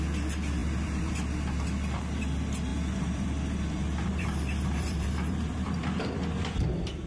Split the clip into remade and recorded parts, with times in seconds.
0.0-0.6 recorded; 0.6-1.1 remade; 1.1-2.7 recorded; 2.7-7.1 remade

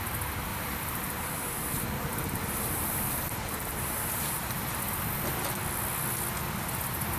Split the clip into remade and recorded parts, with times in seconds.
0.0-0.5 recorded; 0.5-4.8 remade; 4.8-7.2 recorded

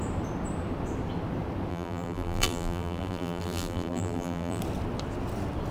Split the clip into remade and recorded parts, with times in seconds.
0.0-1.7 recorded; 1.7-4.6 remade; 4.6-5.7 recorded